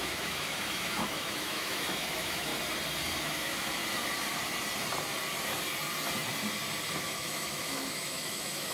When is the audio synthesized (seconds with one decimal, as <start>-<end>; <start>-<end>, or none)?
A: 0.0-2.5; 3.2-3.8; 6.9-8.7